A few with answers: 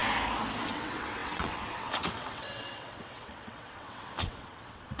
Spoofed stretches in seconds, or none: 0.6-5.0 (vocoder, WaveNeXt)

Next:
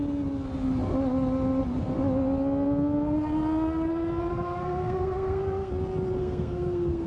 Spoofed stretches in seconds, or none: 4.3-5.7 (codec, SNAC); 6.2-7.1

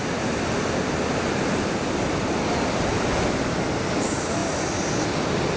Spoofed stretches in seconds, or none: none

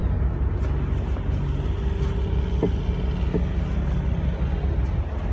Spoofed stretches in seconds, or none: none